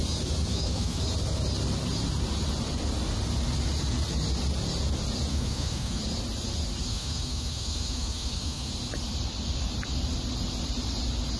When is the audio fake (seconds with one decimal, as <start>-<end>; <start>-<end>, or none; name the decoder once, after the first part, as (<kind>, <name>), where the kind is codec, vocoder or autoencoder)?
0.5-1.0 (autoencoder, DAC-VAE); 5.3-6.0; 6.9-8.7